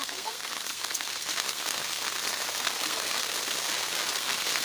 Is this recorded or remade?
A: remade